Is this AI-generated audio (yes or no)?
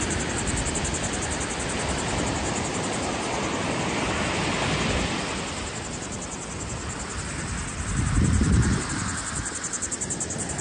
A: no